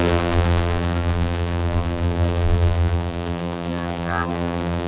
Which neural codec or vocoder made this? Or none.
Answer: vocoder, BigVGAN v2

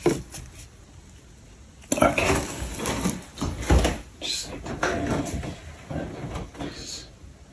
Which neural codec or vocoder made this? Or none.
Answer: none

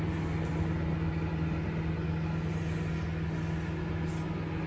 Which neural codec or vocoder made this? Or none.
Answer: none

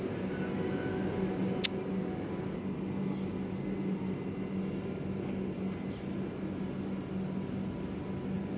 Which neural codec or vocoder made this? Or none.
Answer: none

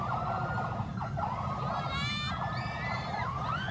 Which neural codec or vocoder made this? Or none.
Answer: none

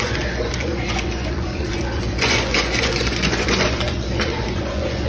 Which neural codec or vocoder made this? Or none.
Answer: vocoder, Vocos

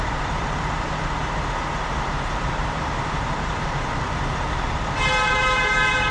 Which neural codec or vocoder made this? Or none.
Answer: vocoder, BigVGAN v2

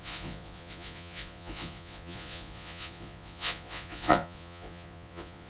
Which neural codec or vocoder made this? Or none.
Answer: vocoder, Vocos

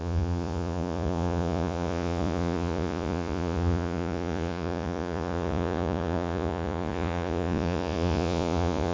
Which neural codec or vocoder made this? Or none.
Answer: vocoder, Vocos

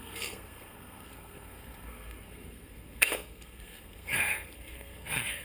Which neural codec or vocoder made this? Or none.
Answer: codec, SNAC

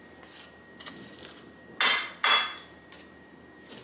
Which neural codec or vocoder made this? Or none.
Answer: none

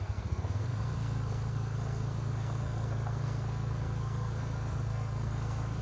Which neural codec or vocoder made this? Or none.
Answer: codec, SNAC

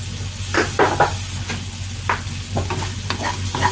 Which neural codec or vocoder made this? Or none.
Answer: none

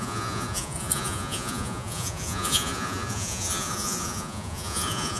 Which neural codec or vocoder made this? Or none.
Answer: vocoder, Vocos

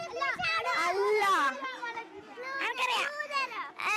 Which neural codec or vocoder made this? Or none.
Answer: vocoder, BigVGAN v2